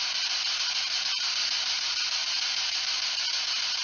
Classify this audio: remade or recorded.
recorded